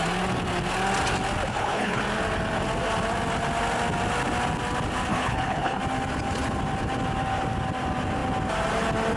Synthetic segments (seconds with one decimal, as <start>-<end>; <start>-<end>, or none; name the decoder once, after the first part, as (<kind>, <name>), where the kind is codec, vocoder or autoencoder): 1.5-2.0 (codec, HILCodec); 5.1-5.8